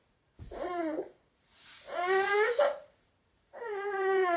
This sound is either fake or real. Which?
fake